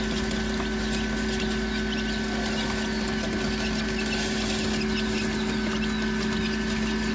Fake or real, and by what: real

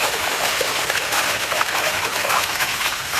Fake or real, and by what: fake, autoencoder, DAC-VAE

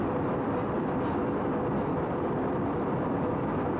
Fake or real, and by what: real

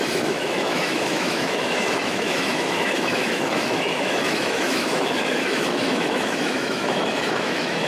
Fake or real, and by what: fake, autoencoder, DAC-VAE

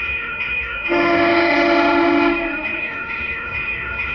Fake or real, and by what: fake, autoencoder, DAC-VAE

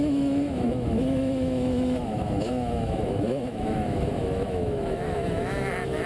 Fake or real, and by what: fake, autoencoder, DAC-VAE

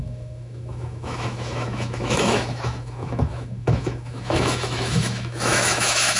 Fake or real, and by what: fake, autoencoder, DAC-VAE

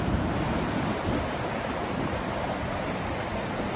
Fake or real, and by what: real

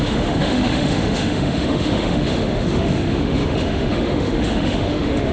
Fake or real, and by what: fake, autoencoder, DAC-VAE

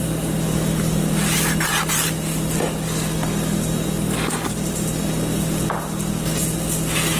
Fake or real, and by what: real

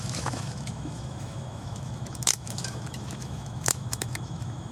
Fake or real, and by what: fake, autoencoder, DAC-VAE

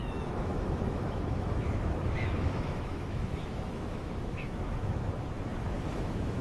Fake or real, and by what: fake, autoencoder, DAC-VAE